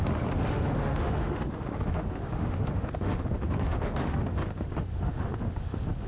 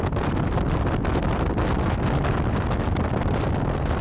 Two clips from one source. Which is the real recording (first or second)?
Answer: second